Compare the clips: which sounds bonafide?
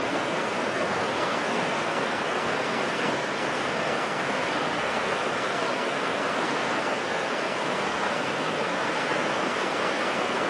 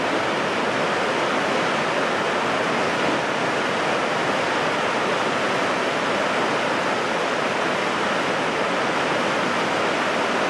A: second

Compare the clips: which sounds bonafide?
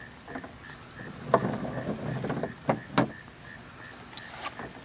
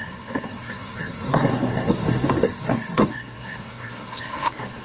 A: first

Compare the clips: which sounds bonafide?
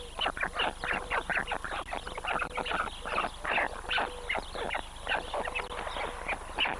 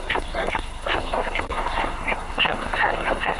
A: first